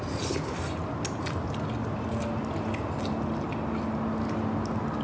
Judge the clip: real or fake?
real